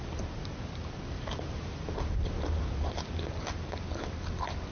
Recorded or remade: recorded